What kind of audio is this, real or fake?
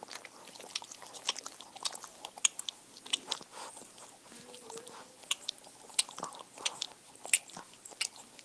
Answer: real